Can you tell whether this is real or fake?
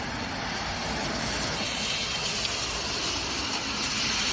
real